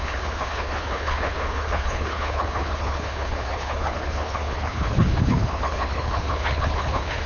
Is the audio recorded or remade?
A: remade